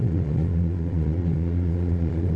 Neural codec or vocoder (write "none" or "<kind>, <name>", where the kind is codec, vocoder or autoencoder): vocoder, Vocos